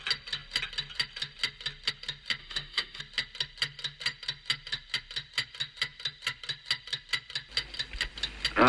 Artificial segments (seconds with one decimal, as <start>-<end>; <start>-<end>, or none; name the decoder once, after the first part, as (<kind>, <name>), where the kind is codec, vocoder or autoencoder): 2.4-3.0 (autoencoder, DAC-VAE)